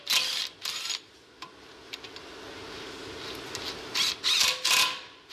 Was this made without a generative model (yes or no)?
yes